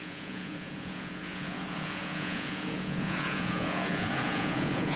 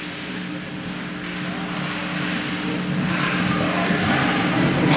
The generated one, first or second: first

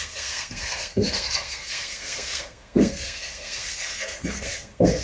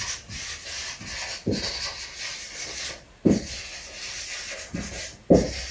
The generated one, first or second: first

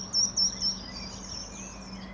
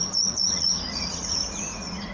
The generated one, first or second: second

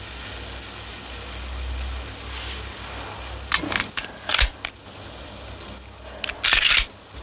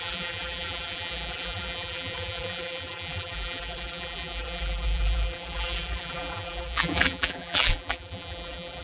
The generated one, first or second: second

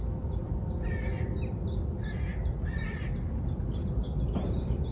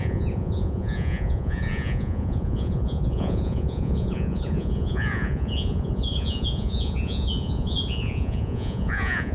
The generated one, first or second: second